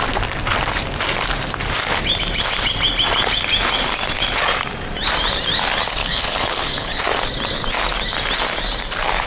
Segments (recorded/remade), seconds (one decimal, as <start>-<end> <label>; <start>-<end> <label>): 0.0-6.0 recorded; 6.0-7.0 remade; 7.0-9.3 recorded